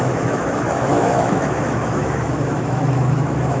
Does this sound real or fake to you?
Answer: fake